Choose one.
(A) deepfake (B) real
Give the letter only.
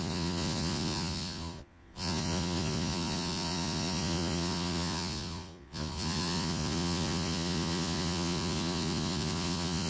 A